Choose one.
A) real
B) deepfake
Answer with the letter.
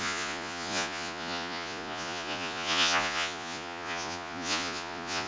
B